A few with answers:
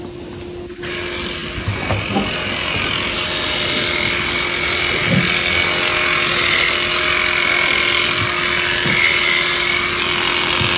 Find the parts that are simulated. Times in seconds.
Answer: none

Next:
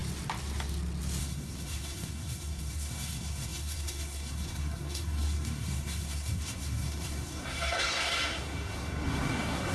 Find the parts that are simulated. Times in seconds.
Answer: 1.2-9.7 (codec, SNAC)

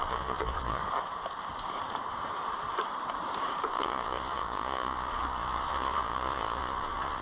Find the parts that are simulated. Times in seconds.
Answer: 0.0-0.8 (vocoder, Vocos); 3.7-7.2

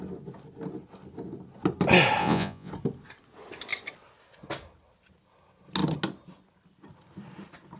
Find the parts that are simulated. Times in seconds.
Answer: 2.2-2.7 (vocoder, Vocos)

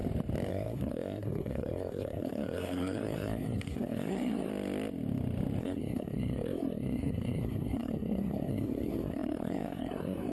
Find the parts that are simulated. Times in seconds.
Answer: 0.5-4.5 (codec, SNAC); 5.6-10.3

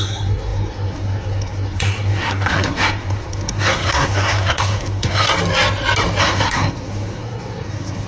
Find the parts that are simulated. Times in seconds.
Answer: 0.0-5.3 (codec, SNAC); 6.2-8.1

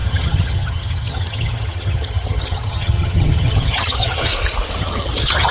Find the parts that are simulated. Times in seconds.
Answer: 0.0-4.3 (vocoder, HiFi-GAN); 4.8-5.5

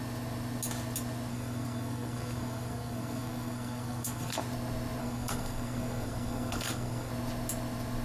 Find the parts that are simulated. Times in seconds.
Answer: 1.3-4.4 (codec, SNAC); 5.0-7.1